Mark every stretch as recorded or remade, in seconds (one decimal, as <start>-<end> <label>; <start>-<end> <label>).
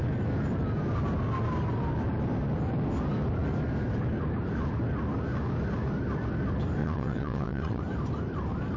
0.0-6.8 recorded; 6.8-7.8 remade; 7.8-8.8 recorded